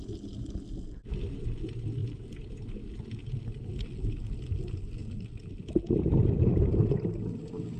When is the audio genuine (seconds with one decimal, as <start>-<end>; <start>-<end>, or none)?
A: 0.0-2.0; 2.8-3.2; 3.7-7.8